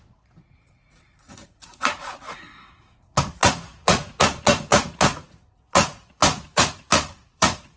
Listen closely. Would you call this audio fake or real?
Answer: fake